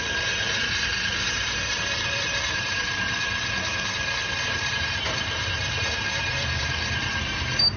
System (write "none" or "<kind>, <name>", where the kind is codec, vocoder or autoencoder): vocoder, BigVGAN v2